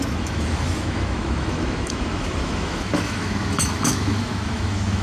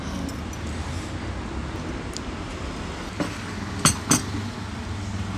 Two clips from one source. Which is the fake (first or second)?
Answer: first